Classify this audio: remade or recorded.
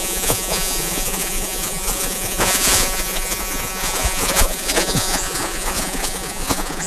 remade